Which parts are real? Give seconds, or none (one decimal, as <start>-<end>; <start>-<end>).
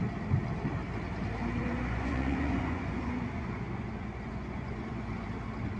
0.0-1.6; 5.1-5.8